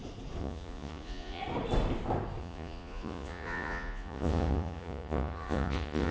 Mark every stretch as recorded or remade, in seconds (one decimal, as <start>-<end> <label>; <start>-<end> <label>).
0.0-0.4 recorded; 0.4-1.4 remade; 1.4-2.4 recorded; 2.4-6.1 remade